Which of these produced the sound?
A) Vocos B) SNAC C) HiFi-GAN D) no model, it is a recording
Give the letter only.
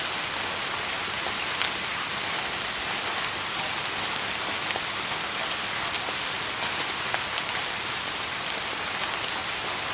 D